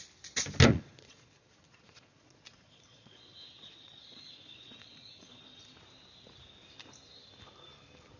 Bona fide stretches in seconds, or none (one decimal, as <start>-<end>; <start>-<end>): 0.0-0.7; 5.6-8.2